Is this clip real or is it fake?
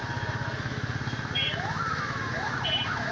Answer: fake